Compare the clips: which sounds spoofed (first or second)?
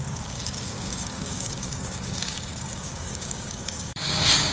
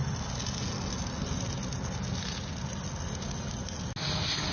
first